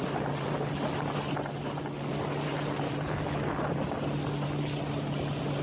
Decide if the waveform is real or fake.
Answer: real